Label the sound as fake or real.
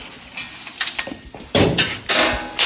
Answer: real